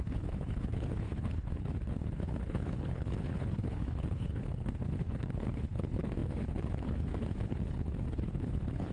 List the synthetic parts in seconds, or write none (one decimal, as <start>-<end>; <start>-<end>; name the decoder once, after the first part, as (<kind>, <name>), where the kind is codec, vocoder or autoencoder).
0.0-8.9 (codec, HILCodec)

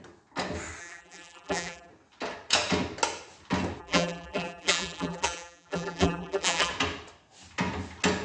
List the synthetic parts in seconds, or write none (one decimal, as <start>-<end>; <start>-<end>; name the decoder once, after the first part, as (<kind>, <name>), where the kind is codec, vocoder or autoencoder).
0.8-1.9 (vocoder, BigVGAN v2); 3.8-6.7

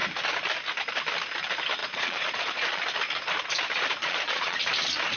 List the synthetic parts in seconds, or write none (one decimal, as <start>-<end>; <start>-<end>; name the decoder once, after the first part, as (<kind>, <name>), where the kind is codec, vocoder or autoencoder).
1.8-2.8 (vocoder, Vocos); 4.0-4.6

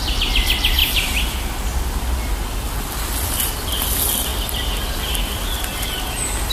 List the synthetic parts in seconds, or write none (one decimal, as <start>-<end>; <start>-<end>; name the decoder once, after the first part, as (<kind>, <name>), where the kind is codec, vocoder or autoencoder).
0.8-3.5 (vocoder, BigVGAN v2); 4.3-6.5

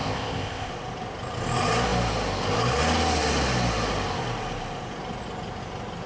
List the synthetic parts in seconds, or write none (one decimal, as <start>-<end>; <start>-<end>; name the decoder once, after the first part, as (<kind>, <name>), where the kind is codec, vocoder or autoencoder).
0.0-0.7 (codec, ZipCodec)

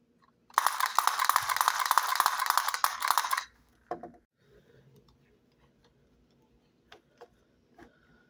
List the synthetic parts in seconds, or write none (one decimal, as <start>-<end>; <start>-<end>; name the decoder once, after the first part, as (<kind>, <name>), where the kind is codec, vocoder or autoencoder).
none

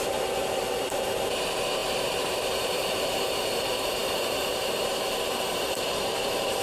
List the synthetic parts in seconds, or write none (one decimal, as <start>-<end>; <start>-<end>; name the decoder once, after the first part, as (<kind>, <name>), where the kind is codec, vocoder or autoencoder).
0.0-6.6 (vocoder, BigVGAN v2)